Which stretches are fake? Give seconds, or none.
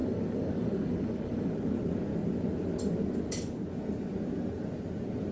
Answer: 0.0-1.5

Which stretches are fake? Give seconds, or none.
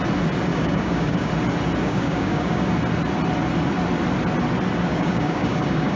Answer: 0.5-1.3; 1.8-2.6; 4.9-6.0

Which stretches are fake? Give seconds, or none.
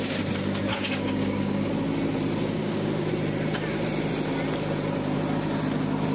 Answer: 0.7-1.7; 2.6-3.1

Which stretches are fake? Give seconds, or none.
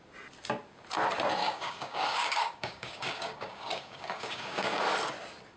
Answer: 1.4-4.8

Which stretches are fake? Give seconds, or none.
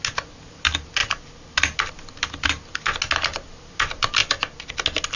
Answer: none